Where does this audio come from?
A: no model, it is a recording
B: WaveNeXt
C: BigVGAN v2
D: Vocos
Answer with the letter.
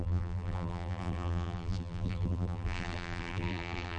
C